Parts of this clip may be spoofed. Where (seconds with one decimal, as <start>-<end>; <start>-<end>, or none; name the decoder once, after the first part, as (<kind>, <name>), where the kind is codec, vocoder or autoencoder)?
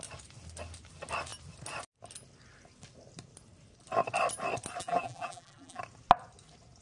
4.8-5.8 (vocoder, BigVGAN v2)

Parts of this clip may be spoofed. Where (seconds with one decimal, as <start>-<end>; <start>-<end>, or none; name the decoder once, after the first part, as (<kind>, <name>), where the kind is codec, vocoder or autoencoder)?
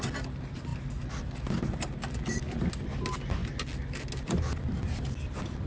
none